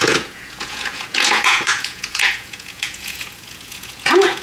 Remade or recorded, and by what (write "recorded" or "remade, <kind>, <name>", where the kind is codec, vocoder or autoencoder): remade, vocoder, Vocos